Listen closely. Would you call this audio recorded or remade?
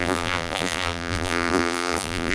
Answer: remade